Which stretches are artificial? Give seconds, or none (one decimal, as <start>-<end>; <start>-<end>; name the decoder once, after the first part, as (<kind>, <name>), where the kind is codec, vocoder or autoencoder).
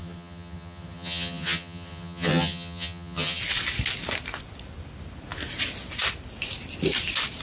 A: 0.0-3.4 (vocoder, HiFi-GAN)